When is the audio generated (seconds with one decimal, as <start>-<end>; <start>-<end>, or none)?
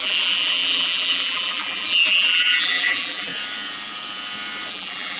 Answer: 0.0-3.3; 4.7-5.2